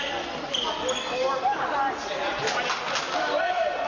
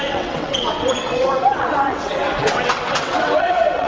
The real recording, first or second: first